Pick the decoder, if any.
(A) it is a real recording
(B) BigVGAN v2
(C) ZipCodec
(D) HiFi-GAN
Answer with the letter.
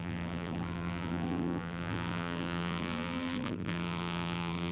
B